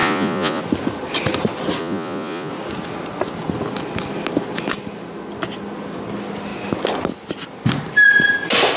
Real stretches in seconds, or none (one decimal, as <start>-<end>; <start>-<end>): 0.6-1.8; 2.5-8.8